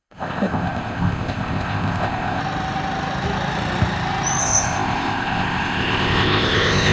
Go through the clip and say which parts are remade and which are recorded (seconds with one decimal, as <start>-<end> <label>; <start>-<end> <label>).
0.0-2.4 remade; 2.4-4.4 recorded; 4.4-6.9 remade